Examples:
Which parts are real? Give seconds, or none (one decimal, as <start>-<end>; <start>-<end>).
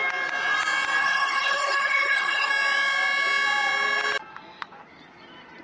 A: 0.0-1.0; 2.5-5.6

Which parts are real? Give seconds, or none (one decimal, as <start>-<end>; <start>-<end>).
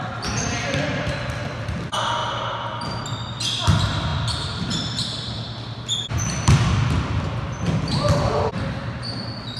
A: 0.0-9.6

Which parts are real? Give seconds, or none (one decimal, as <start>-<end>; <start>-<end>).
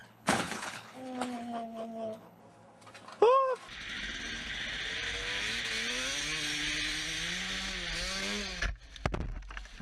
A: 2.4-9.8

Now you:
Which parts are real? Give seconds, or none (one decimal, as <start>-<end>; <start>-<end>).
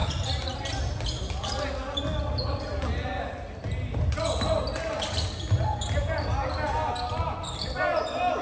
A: 0.0-8.4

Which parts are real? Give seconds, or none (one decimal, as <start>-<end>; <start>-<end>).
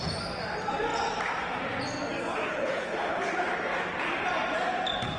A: 0.0-2.5; 3.3-5.2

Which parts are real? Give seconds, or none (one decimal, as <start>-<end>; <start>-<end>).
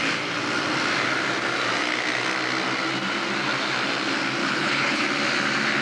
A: 0.0-4.4; 5.0-5.8